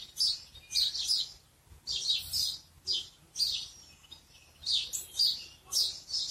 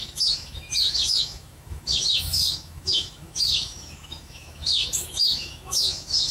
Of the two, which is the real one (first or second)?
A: first